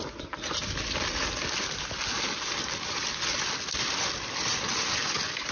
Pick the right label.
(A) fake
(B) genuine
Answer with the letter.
B